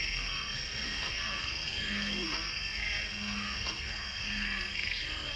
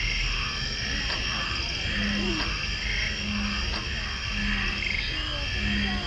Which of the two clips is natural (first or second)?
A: second